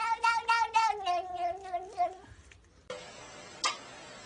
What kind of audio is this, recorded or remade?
recorded